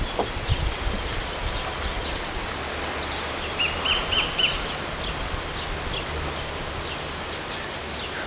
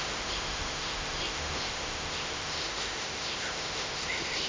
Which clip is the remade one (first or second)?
second